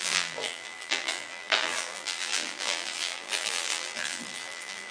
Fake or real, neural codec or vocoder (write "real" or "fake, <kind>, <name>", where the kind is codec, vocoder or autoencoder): fake, vocoder, BigVGAN v2